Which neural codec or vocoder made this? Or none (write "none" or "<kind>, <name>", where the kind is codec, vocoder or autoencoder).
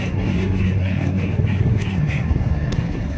codec, SNAC